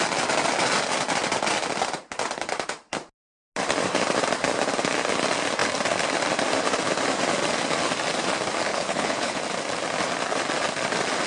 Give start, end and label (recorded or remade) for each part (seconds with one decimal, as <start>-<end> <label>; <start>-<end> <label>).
0.0-8.7 recorded; 8.7-9.4 remade; 9.4-11.3 recorded

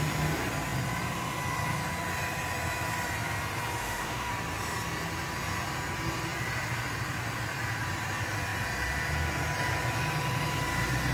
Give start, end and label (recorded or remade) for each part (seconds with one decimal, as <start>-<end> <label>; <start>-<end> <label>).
0.0-3.8 recorded; 3.8-4.3 remade; 4.3-11.1 recorded

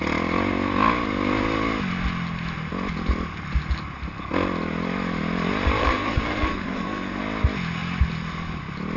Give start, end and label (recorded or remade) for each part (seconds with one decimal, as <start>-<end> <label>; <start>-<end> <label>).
0.0-5.8 recorded; 5.8-7.2 remade; 7.2-9.0 recorded

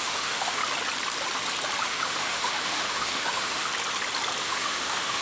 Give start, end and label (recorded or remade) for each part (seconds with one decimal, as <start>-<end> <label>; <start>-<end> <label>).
0.0-0.6 remade; 0.6-1.8 recorded; 1.8-3.7 remade; 3.7-4.4 recorded; 4.4-5.2 remade